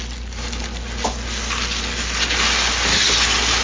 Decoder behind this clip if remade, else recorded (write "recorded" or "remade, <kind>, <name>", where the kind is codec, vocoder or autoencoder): recorded